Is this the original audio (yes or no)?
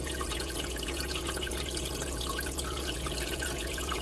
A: no